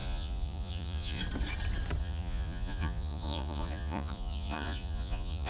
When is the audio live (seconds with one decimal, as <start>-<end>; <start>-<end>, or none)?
1.2-2.0